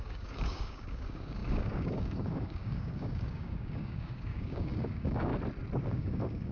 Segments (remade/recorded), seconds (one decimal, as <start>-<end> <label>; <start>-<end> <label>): 0.0-5.3 remade; 5.3-5.8 recorded; 5.8-6.5 remade